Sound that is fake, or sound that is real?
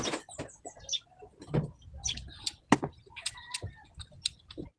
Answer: real